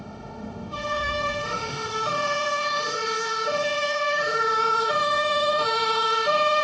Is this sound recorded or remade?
remade